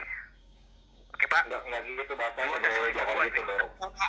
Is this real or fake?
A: fake